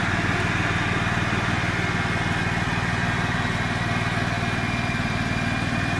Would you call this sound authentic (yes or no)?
yes